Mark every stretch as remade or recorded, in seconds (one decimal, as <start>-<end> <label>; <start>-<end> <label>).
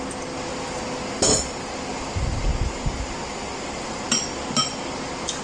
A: 0.0-5.4 recorded